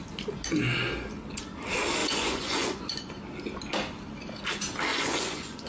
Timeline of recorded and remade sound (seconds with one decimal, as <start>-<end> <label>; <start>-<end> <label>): 0.0-2.0 recorded; 2.0-3.1 remade; 3.1-4.9 recorded; 4.9-5.7 remade